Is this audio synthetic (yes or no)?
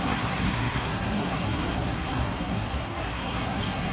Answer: yes